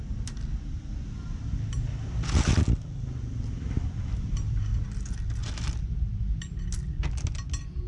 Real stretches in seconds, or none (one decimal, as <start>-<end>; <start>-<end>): 0.0-7.9